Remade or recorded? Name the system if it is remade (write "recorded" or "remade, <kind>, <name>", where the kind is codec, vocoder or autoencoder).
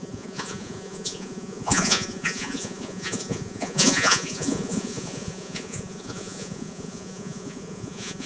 remade, vocoder, Vocos